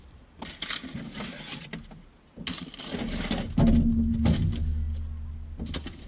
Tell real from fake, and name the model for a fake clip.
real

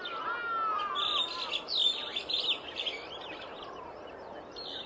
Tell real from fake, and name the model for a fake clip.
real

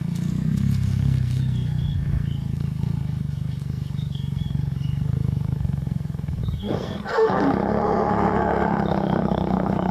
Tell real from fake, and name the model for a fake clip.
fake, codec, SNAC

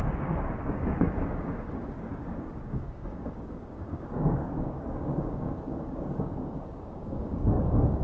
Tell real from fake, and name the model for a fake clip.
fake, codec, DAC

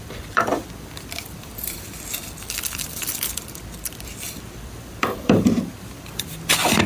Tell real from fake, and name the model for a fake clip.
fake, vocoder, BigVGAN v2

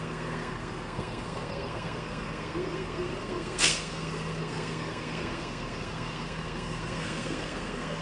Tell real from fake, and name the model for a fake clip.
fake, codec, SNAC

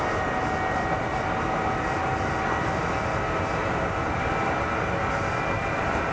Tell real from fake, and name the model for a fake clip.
real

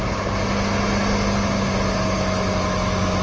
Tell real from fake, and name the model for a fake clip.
real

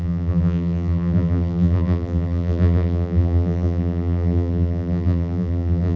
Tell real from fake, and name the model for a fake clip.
fake, vocoder, BigVGAN v2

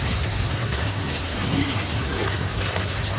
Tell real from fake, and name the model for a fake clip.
fake, codec, SNAC